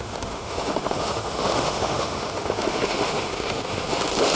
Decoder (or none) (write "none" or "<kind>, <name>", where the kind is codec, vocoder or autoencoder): autoencoder, DAC-VAE